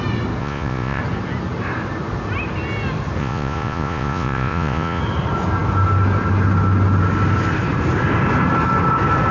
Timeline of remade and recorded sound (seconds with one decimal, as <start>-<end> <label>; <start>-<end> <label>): 0.0-0.4 recorded; 0.4-1.0 remade; 1.0-3.2 recorded; 3.2-5.0 remade; 5.0-9.3 recorded

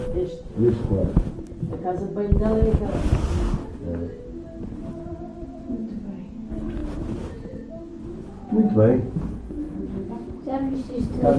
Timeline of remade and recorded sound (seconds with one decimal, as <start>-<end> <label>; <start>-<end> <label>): 0.0-1.0 recorded; 1.0-1.6 remade; 1.6-6.8 recorded; 6.8-7.5 remade; 7.5-11.4 recorded

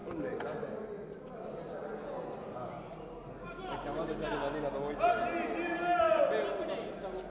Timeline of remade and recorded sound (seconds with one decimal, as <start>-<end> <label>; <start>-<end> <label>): 0.0-7.3 recorded